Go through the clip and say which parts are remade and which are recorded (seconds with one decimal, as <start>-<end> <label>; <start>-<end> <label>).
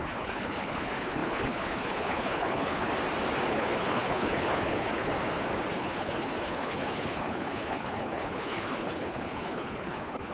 0.0-2.9 remade; 2.9-3.5 recorded; 3.5-5.1 remade; 5.1-5.7 recorded; 5.7-10.3 remade